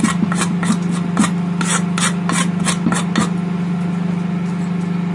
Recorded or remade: recorded